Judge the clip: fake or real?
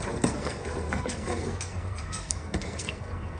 fake